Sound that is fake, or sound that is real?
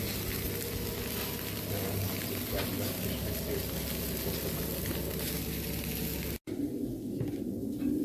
real